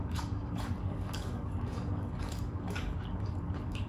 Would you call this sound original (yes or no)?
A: no